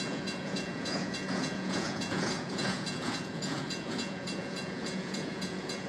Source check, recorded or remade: remade